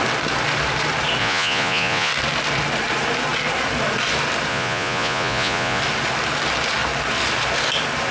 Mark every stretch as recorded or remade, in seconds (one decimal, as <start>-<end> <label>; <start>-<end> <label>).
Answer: 0.0-1.2 recorded; 1.2-2.1 remade; 2.1-4.5 recorded; 4.5-5.8 remade; 5.8-8.1 recorded